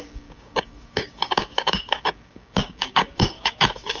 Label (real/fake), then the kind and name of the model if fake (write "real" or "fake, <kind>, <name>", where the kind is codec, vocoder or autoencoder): fake, codec, DAC